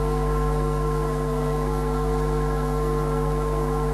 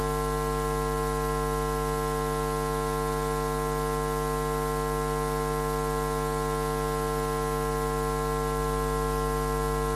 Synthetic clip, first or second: first